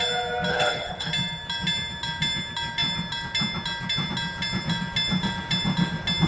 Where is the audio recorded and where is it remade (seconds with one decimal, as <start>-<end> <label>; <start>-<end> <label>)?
0.0-0.5 recorded; 0.5-1.1 remade; 1.1-6.3 recorded